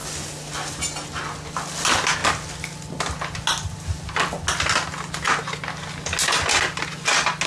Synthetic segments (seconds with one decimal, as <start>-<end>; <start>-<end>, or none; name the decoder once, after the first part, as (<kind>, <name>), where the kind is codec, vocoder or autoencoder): none